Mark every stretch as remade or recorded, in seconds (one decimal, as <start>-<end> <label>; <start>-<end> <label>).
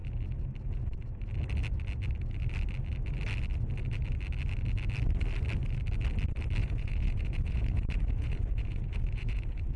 0.0-6.6 recorded; 6.6-9.8 remade